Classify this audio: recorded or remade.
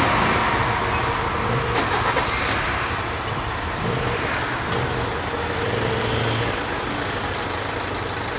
recorded